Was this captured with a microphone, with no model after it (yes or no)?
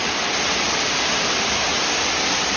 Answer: yes